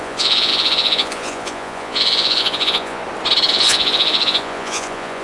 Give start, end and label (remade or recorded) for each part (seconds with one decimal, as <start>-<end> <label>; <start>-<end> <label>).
0.0-3.0 remade; 3.0-3.5 recorded; 3.5-5.2 remade